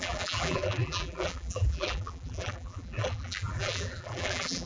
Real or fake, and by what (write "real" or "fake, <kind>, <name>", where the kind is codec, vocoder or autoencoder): fake, vocoder, BigVGAN v2